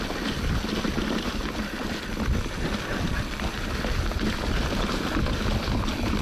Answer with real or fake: real